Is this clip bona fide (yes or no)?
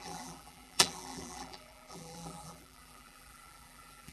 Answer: no